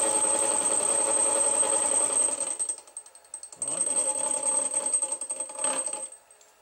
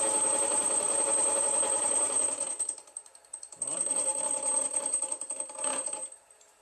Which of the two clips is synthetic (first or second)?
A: second